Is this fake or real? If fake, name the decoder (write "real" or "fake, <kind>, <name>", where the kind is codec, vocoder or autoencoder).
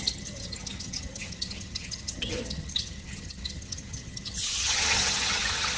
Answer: fake, vocoder, HiFi-GAN